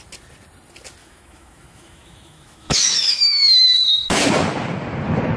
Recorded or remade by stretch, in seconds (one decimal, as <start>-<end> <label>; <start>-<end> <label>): 0.0-1.0 recorded; 1.0-4.2 remade; 4.2-5.4 recorded